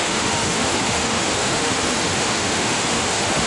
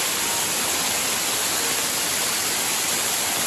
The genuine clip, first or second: second